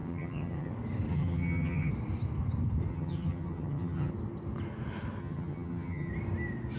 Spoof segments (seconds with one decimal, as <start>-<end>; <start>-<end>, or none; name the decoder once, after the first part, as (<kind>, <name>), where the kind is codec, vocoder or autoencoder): 0.0-0.7 (vocoder, HiFi-GAN); 1.1-1.9; 2.9-4.1; 5.2-6.1

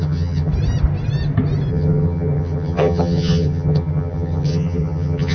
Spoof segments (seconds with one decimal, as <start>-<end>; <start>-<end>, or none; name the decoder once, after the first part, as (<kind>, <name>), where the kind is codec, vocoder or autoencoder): 0.0-0.5 (vocoder, HiFi-GAN); 1.7-5.3